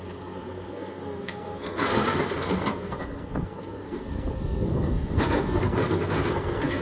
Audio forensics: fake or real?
fake